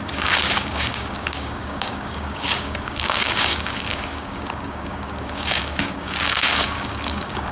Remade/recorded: remade